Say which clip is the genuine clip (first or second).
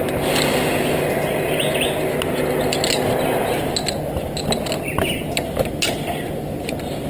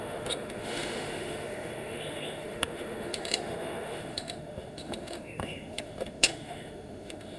first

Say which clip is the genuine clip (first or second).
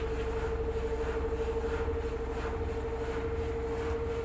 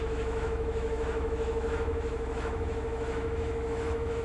first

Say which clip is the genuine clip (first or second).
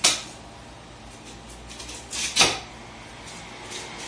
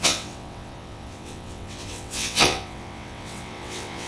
first